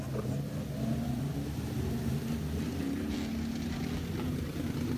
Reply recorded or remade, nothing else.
recorded